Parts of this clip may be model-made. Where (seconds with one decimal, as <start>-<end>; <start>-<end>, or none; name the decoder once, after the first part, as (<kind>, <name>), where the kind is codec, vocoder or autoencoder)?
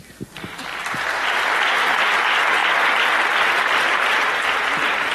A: none